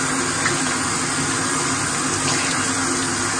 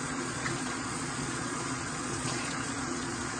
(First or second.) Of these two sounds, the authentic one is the first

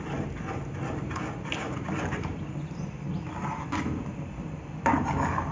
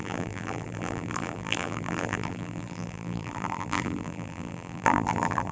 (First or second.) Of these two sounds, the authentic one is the first